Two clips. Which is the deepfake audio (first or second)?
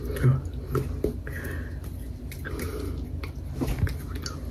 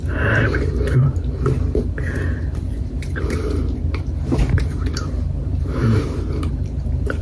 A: second